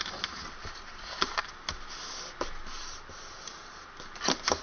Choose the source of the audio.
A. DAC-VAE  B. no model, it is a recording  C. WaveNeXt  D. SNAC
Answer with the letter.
B